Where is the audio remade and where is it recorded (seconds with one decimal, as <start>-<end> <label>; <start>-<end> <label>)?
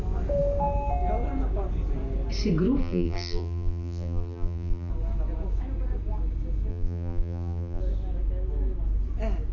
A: 0.0-2.8 recorded; 2.8-4.9 remade; 4.9-6.7 recorded; 6.7-7.8 remade; 7.8-9.5 recorded